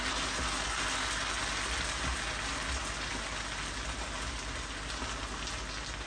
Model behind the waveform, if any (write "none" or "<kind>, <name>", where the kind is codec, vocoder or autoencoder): none